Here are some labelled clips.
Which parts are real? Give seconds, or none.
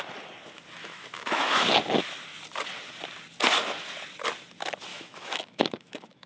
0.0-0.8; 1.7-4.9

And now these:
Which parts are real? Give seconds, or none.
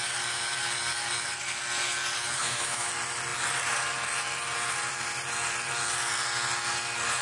0.0-2.4; 2.9-7.2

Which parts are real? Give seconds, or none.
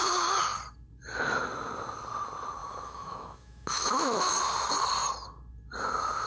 0.0-2.6; 4.4-6.3